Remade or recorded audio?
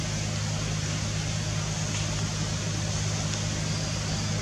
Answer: recorded